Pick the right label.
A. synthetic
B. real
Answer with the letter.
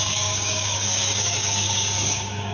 A